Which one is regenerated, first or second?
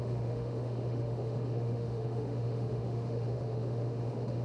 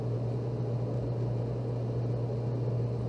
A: first